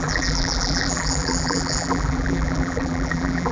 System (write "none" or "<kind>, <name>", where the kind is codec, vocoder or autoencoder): vocoder, BigVGAN v2